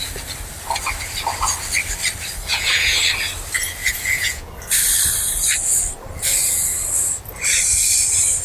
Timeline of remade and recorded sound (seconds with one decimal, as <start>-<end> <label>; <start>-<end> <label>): 0.0-2.5 recorded; 2.5-3.0 remade; 3.0-3.8 recorded; 3.8-4.5 remade; 4.5-8.4 recorded